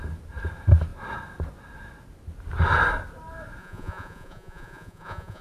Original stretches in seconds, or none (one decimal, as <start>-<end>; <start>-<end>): 0.0-3.6